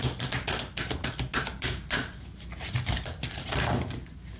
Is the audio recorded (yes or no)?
yes